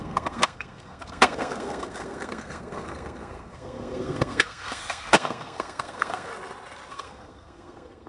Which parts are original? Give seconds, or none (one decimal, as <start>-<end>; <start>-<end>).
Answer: 6.3-6.9